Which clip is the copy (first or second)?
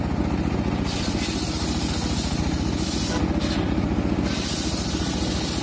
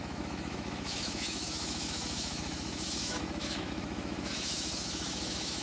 second